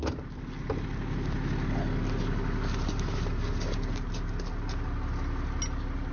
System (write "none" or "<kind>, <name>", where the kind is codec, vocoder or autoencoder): none